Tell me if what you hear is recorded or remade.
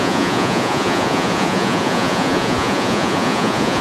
remade